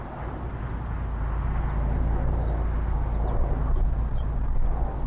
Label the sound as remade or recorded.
recorded